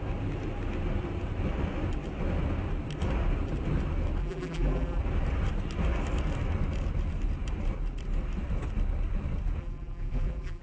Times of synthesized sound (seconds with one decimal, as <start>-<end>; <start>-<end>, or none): 4.2-5.0; 9.6-10.6